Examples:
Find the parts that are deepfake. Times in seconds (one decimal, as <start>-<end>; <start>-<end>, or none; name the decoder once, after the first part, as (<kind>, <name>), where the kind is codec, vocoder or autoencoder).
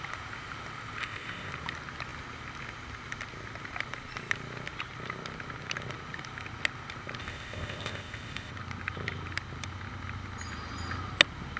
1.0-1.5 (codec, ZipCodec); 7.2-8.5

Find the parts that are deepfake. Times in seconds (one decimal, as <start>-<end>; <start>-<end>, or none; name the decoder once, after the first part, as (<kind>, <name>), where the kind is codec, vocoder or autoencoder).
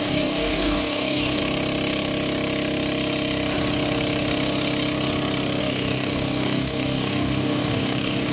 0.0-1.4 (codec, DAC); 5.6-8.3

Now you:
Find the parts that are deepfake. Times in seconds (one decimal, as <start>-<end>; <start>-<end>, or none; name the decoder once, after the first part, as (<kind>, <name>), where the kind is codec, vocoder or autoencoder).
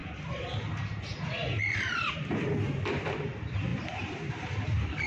1.6-5.1 (vocoder, BigVGAN v2)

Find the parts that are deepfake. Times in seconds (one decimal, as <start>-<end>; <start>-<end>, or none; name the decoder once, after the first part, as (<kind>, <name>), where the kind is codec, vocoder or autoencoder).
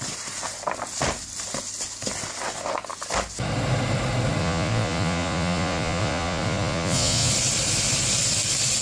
4.4-7.3 (vocoder, Vocos)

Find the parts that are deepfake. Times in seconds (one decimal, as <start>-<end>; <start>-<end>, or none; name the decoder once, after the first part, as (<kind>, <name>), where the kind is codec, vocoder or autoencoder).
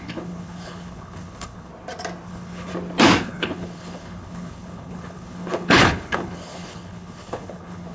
0.0-1.7 (codec, HILCodec); 2.3-2.7; 3.2-7.9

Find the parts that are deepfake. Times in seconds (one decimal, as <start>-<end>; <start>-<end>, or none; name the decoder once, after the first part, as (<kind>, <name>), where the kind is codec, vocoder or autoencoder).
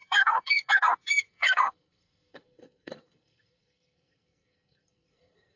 0.0-5.6 (codec, SNAC)